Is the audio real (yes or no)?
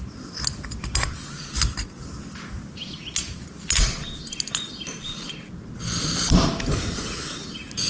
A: yes